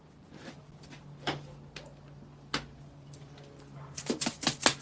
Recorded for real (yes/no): yes